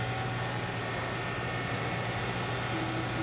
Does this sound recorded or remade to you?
recorded